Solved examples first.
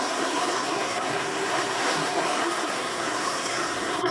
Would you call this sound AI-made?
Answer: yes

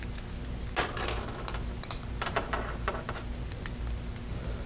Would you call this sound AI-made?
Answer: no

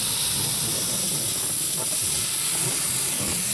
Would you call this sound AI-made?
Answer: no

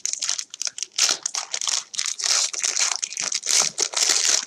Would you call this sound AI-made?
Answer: no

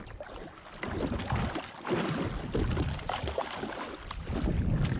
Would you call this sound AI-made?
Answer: no